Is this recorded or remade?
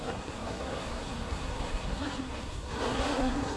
remade